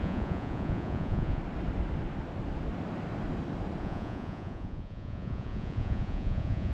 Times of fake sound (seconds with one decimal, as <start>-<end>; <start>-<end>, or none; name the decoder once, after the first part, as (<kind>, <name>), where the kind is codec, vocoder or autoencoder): 0.0-1.4 (vocoder, Vocos); 3.8-6.7